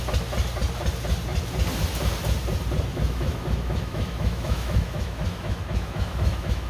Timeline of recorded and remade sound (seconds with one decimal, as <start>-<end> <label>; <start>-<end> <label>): 0.0-2.9 recorded; 2.9-6.7 remade